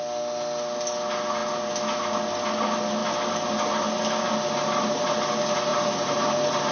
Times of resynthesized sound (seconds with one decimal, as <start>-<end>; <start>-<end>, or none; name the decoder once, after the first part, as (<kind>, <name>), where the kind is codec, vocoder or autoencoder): 3.0-4.3 (vocoder, BigVGAN v2); 5.7-6.2